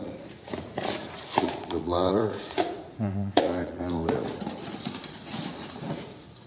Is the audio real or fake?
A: fake